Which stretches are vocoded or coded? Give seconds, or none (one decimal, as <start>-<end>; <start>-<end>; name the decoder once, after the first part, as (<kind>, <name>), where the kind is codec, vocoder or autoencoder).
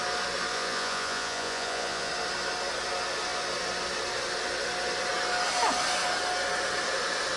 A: 0.5-2.1 (vocoder, Vocos)